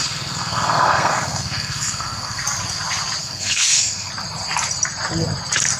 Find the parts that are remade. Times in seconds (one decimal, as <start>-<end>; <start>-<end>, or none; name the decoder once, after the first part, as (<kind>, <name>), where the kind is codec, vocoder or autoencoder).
0.0-2.4 (codec, SNAC); 3.2-4.1